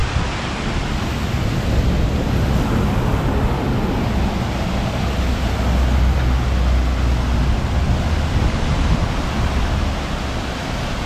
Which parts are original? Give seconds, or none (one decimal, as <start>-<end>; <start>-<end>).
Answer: 0.0-11.1

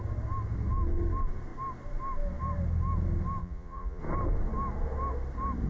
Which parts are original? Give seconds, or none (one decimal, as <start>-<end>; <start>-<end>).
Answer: 0.0-3.4; 4.0-5.7

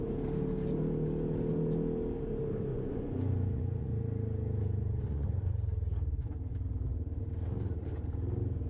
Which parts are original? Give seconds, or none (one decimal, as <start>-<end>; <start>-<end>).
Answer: 0.0-2.7; 3.9-5.0; 5.5-8.7

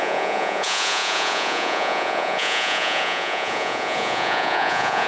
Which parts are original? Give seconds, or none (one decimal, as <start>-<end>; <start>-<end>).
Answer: none

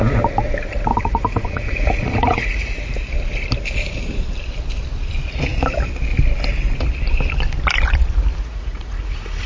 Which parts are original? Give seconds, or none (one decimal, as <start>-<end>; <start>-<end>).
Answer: 0.0-0.9; 2.7-8.4

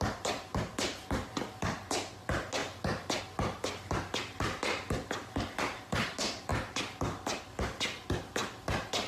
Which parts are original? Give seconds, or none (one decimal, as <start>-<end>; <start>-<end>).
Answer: 0.0-9.1

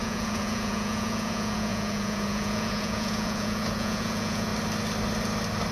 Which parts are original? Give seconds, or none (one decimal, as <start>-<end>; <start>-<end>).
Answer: 4.5-5.7